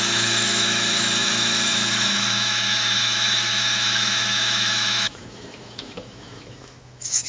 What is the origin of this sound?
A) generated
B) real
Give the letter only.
A